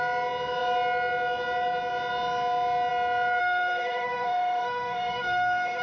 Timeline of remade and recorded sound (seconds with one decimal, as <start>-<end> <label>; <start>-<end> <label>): 0.0-3.4 recorded; 3.4-5.8 remade